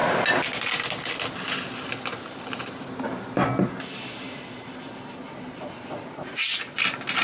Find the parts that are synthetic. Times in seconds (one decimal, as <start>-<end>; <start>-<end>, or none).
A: none

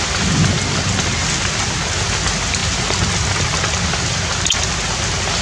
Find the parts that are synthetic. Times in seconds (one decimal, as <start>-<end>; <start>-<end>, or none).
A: none